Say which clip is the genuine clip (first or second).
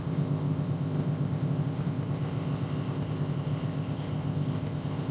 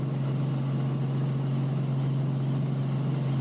second